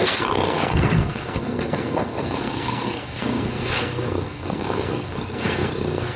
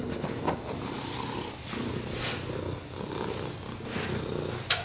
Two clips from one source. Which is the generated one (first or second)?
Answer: first